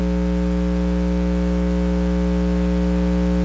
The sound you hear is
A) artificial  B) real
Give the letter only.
B